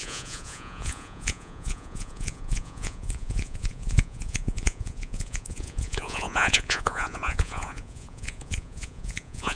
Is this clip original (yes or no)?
no